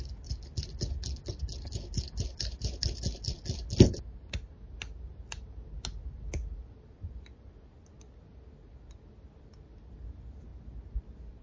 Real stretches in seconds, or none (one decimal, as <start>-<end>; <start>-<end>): 0.0-11.4